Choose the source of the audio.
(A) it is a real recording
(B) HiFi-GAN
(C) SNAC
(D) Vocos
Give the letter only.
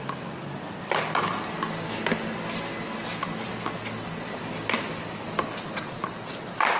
A